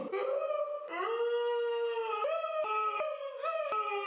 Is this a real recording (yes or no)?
yes